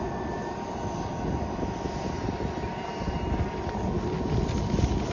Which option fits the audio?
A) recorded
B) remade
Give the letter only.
A